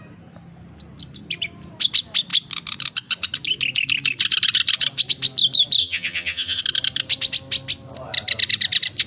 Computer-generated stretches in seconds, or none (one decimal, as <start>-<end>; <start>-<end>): 5.8-6.6